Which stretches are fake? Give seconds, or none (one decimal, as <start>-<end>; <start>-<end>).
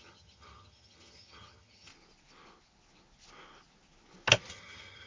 0.0-1.9; 4.5-5.1